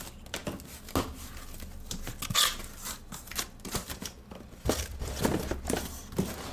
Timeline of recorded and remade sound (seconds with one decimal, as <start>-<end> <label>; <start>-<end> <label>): 0.0-3.8 recorded; 3.8-5.2 remade; 5.2-6.5 recorded